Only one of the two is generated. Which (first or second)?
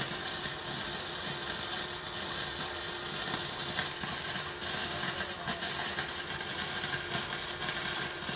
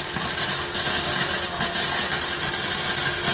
first